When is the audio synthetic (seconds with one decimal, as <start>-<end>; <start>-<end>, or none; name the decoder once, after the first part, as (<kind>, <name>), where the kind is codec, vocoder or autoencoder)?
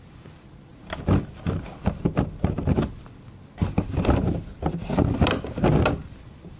0.0-4.5 (vocoder, BigVGAN v2); 5.9-6.6